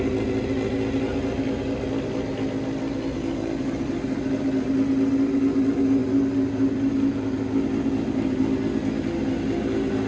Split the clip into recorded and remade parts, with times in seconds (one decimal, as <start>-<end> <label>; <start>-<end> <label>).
0.0-10.1 recorded

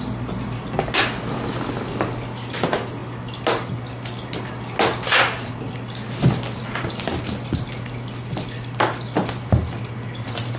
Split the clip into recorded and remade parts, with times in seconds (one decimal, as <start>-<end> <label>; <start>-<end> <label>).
0.0-10.6 recorded

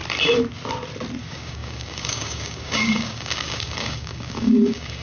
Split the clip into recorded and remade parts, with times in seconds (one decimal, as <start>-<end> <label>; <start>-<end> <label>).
0.0-1.2 recorded; 1.2-5.0 remade

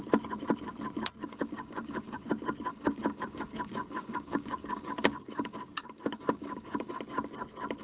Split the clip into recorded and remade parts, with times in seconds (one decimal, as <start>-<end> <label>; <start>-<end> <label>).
0.0-1.2 recorded; 1.2-2.3 remade; 2.3-2.7 recorded; 2.7-7.0 remade; 7.0-7.8 recorded

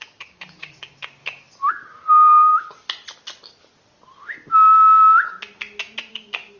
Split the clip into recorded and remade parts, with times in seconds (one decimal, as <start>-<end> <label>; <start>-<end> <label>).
0.0-1.2 remade; 1.2-1.7 recorded; 1.7-2.5 remade; 2.5-6.1 recorded; 6.1-6.6 remade

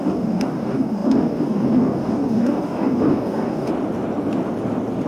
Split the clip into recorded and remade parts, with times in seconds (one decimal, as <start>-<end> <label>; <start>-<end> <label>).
0.0-3.7 remade; 3.7-5.1 recorded

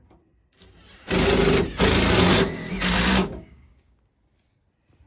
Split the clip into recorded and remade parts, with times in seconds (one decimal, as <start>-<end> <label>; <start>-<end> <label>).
0.0-3.2 recorded; 3.2-4.0 remade; 4.0-5.1 recorded

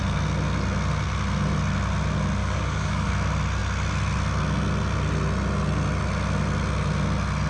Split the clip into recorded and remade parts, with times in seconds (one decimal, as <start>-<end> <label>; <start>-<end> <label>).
0.0-2.4 recorded; 2.4-3.1 remade; 3.1-7.5 recorded